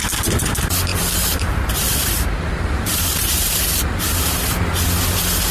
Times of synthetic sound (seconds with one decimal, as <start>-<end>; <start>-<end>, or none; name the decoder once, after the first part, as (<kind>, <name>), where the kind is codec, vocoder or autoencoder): 0.9-3.7 (vocoder, BigVGAN v2)